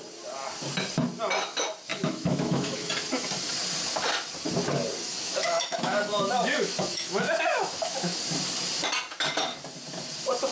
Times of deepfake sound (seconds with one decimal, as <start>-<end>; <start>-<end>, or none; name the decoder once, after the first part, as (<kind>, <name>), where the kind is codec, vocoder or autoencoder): 1.9-2.9 (autoencoder, DAC-VAE); 5.1-8.2

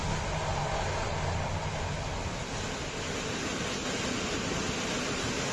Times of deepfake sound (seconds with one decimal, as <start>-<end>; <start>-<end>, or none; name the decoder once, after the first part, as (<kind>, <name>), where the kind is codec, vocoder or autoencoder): none

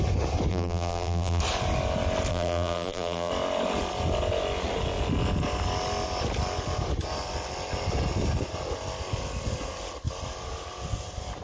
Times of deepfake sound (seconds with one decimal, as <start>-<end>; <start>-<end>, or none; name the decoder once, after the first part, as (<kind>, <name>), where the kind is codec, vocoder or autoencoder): 0.5-1.4 (vocoder, BigVGAN v2); 2.3-3.3

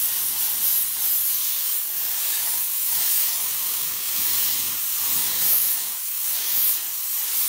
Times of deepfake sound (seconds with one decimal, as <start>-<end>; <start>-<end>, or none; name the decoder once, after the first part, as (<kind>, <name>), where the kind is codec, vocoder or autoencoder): 1.4-4.8 (codec, DAC); 5.2-6.7

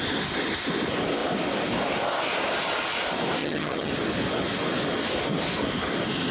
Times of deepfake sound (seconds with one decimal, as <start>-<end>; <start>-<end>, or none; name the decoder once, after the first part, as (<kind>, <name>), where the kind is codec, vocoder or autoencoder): 3.4-3.9 (vocoder, HiFi-GAN)

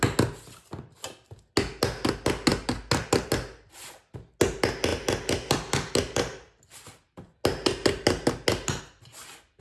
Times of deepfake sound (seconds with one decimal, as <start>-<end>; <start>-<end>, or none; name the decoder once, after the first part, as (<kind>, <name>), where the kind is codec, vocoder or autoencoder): none